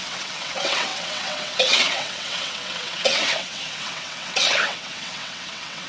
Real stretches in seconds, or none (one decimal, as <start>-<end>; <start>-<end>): none